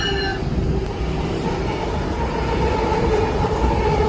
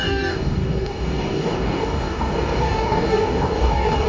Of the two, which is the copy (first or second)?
second